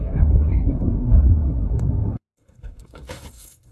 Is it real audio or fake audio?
fake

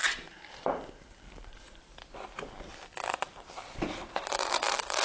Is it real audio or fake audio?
fake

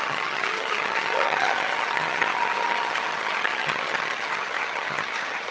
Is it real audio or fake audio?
fake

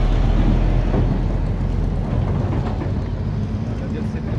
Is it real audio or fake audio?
real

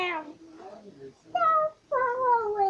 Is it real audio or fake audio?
real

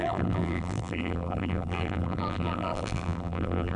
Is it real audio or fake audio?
fake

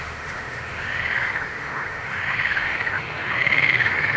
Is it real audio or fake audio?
fake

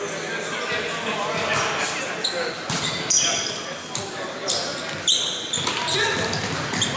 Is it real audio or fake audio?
real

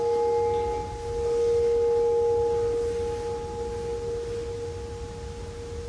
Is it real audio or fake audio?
real